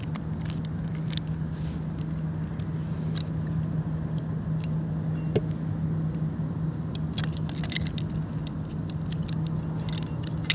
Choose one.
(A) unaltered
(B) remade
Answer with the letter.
A